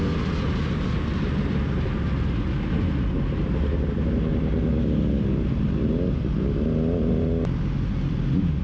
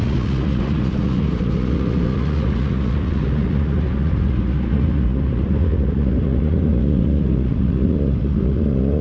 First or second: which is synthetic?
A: second